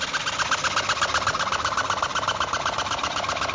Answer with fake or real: real